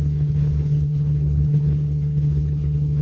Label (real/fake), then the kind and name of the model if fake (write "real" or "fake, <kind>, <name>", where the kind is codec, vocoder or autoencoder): fake, codec, HILCodec